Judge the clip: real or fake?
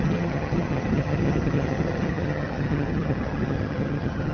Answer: fake